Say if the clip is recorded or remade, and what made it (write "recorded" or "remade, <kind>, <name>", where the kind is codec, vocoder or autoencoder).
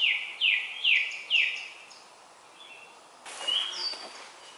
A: recorded